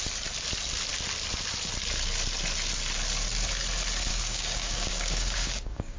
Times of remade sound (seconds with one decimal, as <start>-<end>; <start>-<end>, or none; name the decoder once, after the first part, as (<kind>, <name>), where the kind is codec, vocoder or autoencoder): 4.1-6.0 (codec, DAC)